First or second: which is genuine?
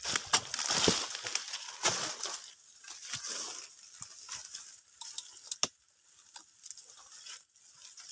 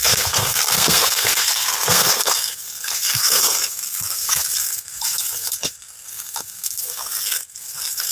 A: first